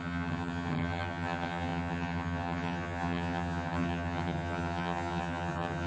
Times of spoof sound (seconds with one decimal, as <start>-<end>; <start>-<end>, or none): 0.0-5.9